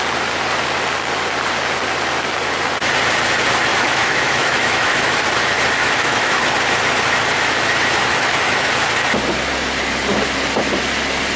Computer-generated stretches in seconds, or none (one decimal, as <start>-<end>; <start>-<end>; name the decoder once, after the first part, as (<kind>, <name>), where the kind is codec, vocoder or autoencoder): 3.7-5.2 (autoencoder, DAC-VAE); 5.8-6.4; 8.1-8.7